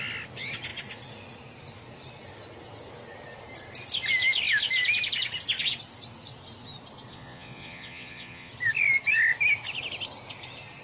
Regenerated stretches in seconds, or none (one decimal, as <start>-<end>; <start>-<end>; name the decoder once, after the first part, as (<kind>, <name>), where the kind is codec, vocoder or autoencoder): 7.1-8.5 (vocoder, Vocos)